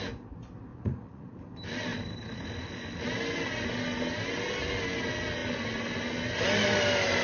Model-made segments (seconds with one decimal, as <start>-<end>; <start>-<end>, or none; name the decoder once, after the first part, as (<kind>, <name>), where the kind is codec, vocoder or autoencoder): 0.7-1.4 (vocoder, Vocos)

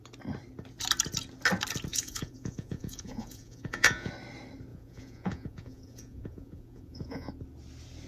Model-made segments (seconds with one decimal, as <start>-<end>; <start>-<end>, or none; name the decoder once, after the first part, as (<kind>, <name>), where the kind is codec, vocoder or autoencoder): 1.9-4.1 (vocoder, Vocos); 4.7-7.3

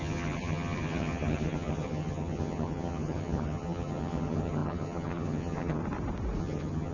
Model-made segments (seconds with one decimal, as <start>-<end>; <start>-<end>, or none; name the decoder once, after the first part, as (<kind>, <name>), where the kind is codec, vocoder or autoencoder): 0.0-5.8 (vocoder, HiFi-GAN); 6.4-6.9

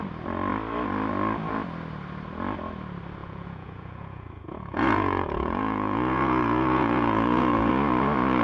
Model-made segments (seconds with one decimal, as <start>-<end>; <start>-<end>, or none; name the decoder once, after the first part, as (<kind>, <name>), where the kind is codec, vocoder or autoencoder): 3.2-7.7 (vocoder, Vocos)